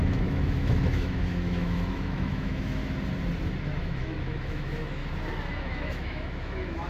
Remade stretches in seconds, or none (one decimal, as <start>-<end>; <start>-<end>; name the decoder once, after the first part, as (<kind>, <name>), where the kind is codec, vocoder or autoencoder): 0.0-2.8 (autoencoder, DAC-VAE); 3.8-5.0; 5.6-6.9